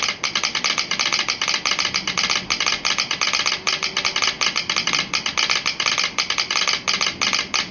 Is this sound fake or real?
real